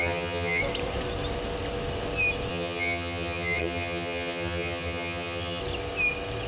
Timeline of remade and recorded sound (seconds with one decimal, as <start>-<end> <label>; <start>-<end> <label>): 0.0-0.6 remade; 0.6-2.5 recorded; 2.5-5.6 remade; 5.6-6.5 recorded